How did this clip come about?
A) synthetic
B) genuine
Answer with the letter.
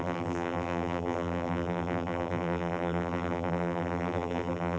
A